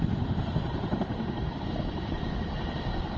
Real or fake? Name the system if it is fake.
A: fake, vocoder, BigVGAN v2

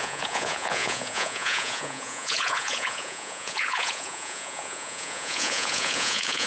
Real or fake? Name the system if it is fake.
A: fake, vocoder, Vocos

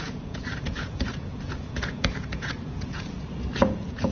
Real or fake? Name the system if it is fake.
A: fake, vocoder, Vocos